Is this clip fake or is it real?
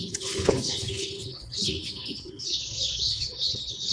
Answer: fake